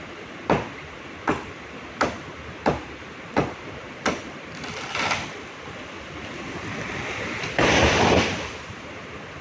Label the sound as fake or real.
fake